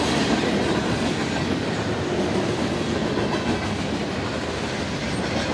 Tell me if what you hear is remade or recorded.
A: recorded